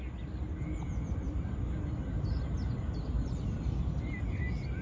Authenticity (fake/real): real